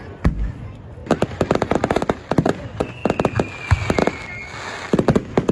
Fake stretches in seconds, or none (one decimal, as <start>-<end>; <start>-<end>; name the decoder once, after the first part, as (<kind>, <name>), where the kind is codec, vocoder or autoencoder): 0.0-1.0 (vocoder, Vocos); 2.4-3.0